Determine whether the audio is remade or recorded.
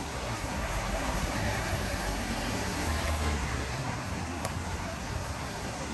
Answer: remade